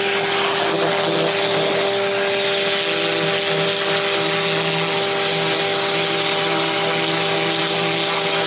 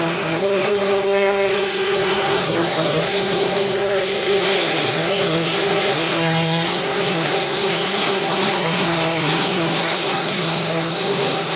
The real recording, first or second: first